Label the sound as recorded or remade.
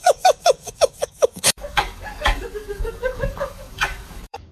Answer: remade